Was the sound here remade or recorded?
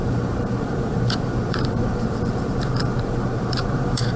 remade